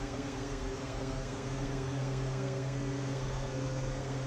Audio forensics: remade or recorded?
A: remade